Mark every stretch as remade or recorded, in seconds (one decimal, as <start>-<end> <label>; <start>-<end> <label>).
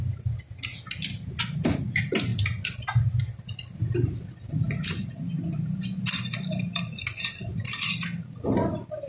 0.0-9.1 recorded